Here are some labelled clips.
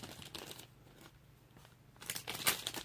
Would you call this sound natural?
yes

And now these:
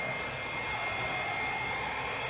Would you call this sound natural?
yes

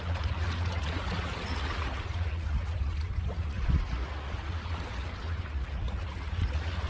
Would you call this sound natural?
no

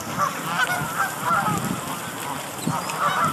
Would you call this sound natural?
yes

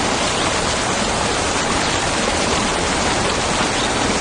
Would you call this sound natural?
no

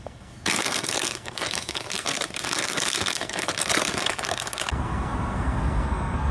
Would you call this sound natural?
no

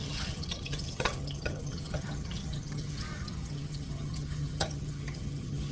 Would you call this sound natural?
no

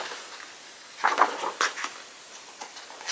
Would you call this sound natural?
yes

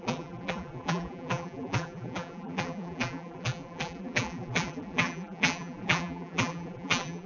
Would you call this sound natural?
no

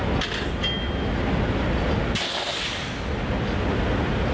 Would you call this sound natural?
yes